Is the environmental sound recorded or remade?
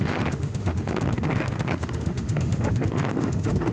remade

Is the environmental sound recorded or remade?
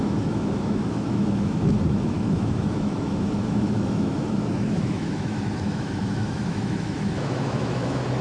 remade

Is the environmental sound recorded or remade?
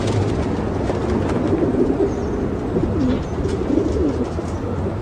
recorded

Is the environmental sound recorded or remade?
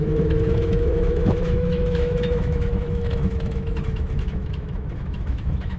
remade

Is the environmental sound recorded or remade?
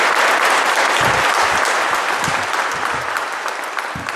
recorded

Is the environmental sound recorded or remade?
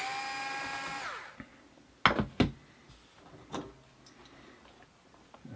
recorded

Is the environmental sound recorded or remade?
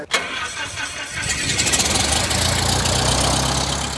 recorded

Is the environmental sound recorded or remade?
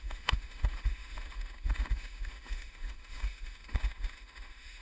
remade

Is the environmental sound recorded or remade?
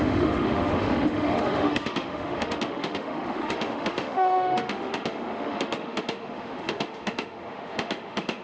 remade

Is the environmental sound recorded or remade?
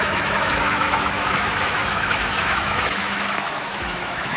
remade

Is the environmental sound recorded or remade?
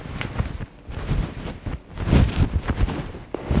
recorded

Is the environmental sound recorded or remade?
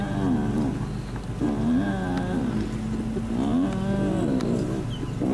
recorded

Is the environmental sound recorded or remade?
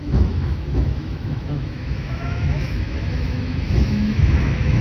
remade